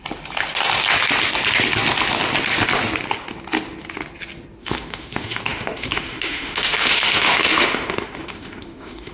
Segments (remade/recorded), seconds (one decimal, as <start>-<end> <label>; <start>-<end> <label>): 0.0-4.6 recorded; 4.6-9.1 remade